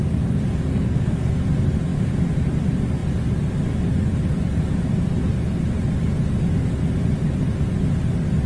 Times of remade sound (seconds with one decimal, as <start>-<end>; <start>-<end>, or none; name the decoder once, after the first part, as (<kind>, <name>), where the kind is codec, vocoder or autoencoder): 0.7-1.4 (codec, SNAC)

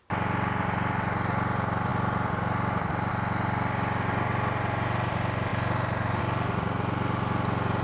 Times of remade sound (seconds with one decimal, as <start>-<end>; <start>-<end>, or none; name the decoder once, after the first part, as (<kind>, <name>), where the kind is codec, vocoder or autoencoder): none

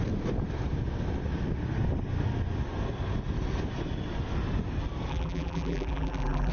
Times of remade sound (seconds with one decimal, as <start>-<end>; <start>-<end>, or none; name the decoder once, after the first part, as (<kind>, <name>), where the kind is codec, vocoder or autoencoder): 5.1-6.5 (vocoder, BigVGAN v2)

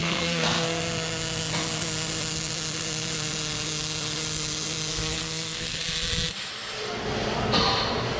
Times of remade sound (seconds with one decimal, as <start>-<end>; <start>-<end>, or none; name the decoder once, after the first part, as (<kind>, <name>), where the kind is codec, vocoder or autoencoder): 0.0-0.8 (codec, SNAC); 4.9-5.8

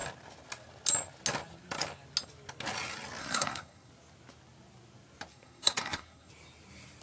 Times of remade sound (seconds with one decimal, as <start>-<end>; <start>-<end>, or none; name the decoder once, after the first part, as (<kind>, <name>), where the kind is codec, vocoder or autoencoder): 3.2-3.9 (codec, SNAC); 5.3-6.3

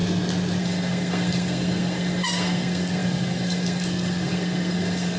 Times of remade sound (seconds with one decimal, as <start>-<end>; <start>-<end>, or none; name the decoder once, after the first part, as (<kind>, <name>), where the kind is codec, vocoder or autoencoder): 0.6-5.2 (codec, SNAC)

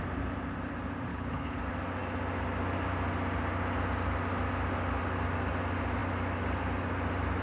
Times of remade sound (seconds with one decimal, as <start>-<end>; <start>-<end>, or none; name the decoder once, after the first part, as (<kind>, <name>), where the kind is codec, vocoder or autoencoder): 1.1-1.6 (codec, HILCodec)